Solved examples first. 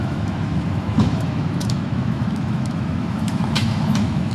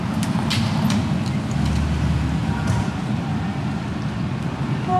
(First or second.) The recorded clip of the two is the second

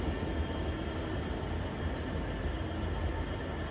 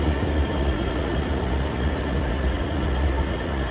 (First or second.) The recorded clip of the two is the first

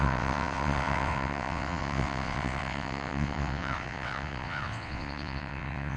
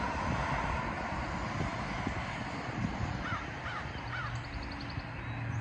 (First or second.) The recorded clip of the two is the second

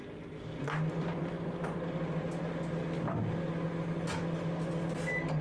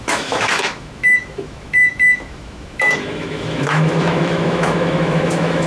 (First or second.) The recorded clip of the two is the first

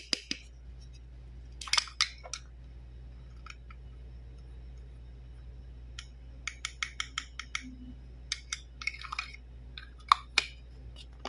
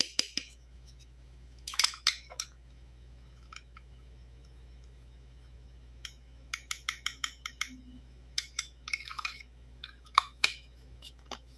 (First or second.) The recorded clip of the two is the first